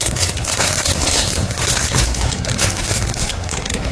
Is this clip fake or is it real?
fake